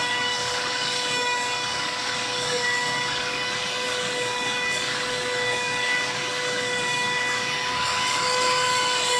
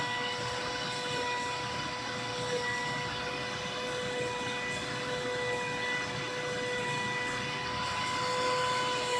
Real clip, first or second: second